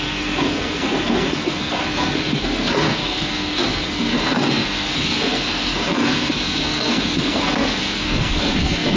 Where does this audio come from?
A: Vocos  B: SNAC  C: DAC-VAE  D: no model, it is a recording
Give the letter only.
B